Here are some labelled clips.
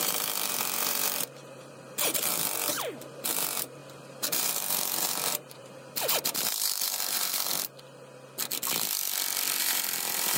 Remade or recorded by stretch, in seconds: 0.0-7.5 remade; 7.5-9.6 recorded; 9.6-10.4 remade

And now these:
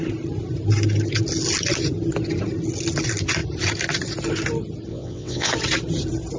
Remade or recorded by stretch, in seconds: 0.0-4.9 recorded; 4.9-5.5 remade; 5.5-6.4 recorded

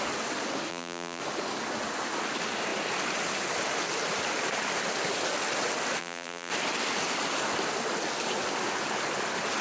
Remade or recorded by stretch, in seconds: 0.0-0.7 recorded; 0.7-1.2 remade; 1.2-6.0 recorded; 6.0-6.5 remade; 6.5-9.6 recorded

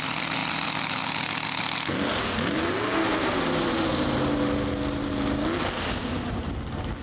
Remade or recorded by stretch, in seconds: 0.0-7.0 recorded

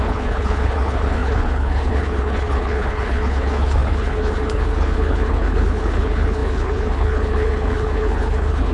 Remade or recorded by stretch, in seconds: 0.0-8.7 remade

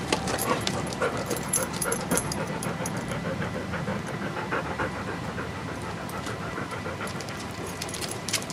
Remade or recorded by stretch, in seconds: 0.0-3.9 remade; 3.9-4.6 recorded; 4.6-8.5 remade

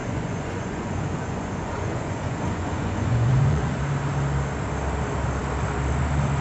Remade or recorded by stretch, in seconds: 0.0-3.8 remade; 3.8-6.4 recorded

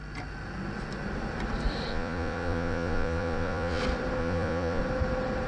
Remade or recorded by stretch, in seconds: 0.0-1.9 recorded; 1.9-3.8 remade; 3.8-4.2 recorded; 4.2-4.8 remade; 4.8-5.5 recorded